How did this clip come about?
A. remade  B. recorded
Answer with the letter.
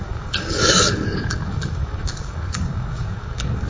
A